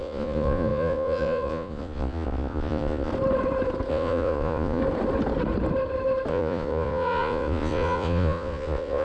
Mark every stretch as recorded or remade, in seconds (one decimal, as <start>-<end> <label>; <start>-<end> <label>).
0.0-3.1 remade; 3.1-3.9 recorded; 3.9-4.8 remade; 4.8-6.3 recorded; 6.3-9.0 remade